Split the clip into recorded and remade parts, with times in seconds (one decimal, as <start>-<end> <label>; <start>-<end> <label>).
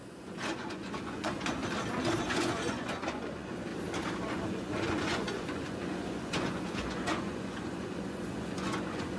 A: 0.0-1.6 remade; 1.6-2.2 recorded; 2.2-3.7 remade; 3.7-4.2 recorded; 4.2-9.2 remade